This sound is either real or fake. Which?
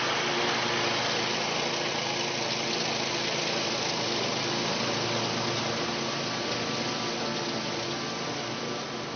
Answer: real